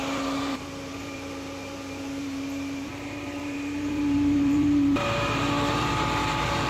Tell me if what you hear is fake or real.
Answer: fake